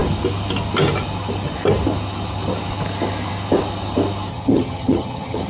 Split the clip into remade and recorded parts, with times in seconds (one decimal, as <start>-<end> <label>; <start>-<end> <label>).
0.0-4.3 recorded; 4.3-5.5 remade

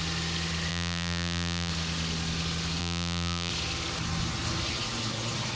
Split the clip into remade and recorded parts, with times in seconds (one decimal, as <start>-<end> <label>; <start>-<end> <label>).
0.0-0.7 recorded; 0.7-1.7 remade; 1.7-2.8 recorded; 2.8-3.5 remade; 3.5-5.6 recorded

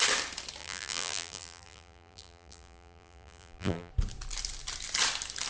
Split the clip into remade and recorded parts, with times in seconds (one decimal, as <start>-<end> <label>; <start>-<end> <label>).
0.0-0.6 recorded; 0.6-3.9 remade; 3.9-5.5 recorded

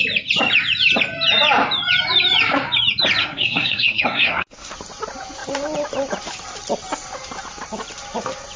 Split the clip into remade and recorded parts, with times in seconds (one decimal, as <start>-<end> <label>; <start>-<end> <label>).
0.0-3.2 recorded; 3.2-4.7 remade; 4.7-8.6 recorded

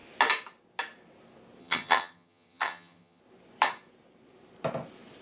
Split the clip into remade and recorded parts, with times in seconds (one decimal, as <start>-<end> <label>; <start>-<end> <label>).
0.0-1.6 recorded; 1.6-3.2 remade; 3.2-5.2 recorded

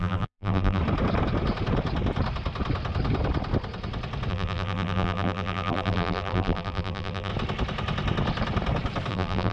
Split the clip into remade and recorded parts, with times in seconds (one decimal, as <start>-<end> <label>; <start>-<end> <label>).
0.0-0.8 remade; 0.8-4.3 recorded; 4.3-7.3 remade; 7.3-9.1 recorded; 9.1-9.5 remade

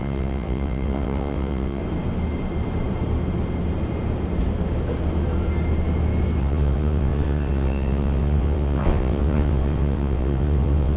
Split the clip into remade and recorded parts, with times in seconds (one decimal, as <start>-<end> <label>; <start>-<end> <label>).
0.0-1.8 remade; 1.8-6.4 recorded; 6.4-11.0 remade

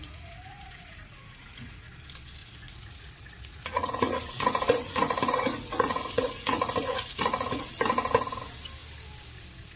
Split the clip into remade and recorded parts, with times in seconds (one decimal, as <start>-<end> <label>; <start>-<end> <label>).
0.0-1.9 remade; 1.9-2.4 recorded; 2.4-7.6 remade; 7.6-9.8 recorded